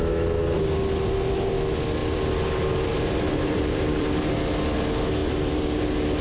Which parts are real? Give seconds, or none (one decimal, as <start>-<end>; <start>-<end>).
0.0-2.0; 4.1-6.2